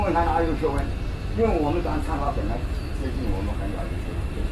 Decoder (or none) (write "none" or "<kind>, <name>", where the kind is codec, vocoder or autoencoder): none